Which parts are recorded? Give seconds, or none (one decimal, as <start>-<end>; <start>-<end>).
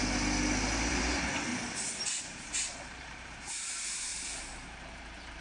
0.0-0.9; 1.5-2.2